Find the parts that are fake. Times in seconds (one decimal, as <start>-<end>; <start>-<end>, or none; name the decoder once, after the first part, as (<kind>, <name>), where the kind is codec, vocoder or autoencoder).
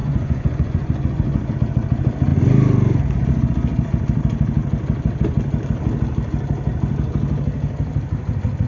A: 0.0-1.5 (vocoder, Vocos)